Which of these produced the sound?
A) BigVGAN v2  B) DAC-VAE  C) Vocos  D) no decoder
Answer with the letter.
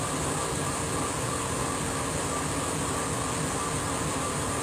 D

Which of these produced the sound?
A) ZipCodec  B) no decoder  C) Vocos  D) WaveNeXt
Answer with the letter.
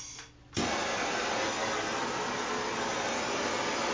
B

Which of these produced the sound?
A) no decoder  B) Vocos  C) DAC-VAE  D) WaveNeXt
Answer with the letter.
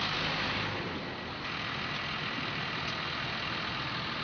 A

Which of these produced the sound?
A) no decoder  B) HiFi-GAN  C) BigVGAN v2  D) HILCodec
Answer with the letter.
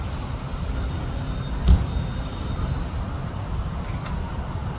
A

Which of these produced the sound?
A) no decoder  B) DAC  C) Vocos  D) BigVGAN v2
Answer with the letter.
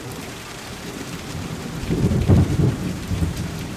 D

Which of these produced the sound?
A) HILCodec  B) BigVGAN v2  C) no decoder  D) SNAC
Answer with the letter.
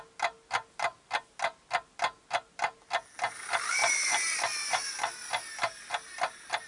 C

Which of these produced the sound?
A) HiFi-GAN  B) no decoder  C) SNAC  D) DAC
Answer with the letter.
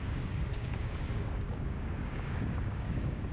D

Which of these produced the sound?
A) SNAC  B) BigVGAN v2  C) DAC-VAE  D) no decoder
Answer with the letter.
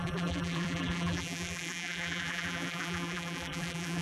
B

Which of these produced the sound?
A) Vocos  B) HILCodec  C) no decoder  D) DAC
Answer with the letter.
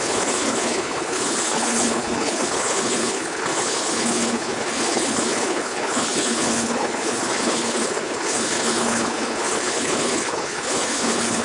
B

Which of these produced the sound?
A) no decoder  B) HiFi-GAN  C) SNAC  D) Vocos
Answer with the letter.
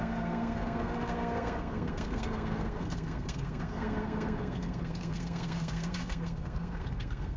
C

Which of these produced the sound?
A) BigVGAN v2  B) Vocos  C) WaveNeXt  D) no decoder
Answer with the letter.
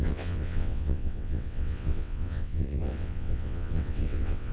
C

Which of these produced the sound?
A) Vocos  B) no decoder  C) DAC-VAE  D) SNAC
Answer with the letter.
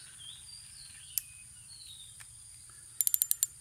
B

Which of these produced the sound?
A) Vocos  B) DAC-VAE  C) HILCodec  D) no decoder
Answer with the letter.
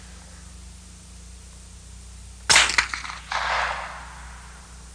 D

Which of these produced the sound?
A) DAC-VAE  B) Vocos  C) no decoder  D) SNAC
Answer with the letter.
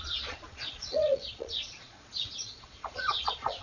B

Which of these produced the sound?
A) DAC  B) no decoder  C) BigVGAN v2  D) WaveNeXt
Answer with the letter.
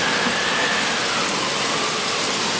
B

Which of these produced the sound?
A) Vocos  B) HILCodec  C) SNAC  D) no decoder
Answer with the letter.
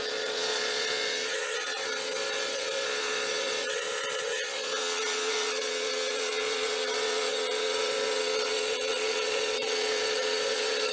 A